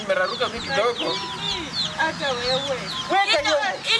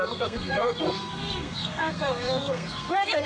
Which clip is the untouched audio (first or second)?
first